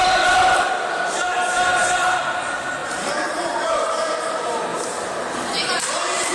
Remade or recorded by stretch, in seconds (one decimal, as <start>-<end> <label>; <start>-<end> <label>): 0.0-2.8 recorded; 2.8-3.8 remade; 3.8-4.7 recorded; 4.7-6.3 remade